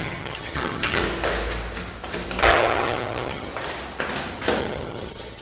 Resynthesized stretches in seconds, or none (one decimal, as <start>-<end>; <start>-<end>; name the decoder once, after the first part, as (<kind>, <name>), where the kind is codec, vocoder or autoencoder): 0.0-1.0 (vocoder, HiFi-GAN); 2.4-3.5; 4.6-5.4